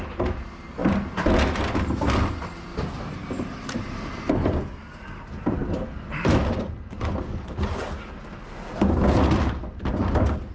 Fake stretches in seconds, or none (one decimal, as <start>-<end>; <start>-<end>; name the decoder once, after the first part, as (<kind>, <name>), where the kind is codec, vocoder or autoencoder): 2.7-4.2 (vocoder, BigVGAN v2)